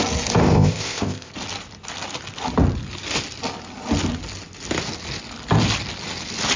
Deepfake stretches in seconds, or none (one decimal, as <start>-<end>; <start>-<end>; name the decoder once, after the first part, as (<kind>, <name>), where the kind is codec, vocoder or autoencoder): 0.4-1.3 (codec, ZipCodec)